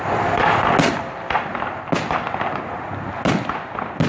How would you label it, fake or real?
real